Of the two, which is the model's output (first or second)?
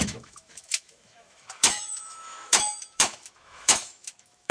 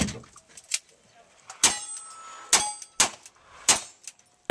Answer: first